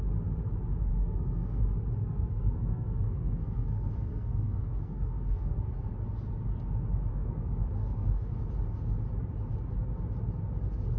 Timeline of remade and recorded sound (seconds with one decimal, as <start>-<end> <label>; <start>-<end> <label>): 0.0-0.9 recorded; 0.9-1.6 remade; 1.6-2.0 recorded; 2.0-5.9 remade; 5.9-7.1 recorded; 7.1-8.4 remade; 8.4-11.0 recorded